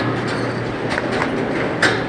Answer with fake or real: real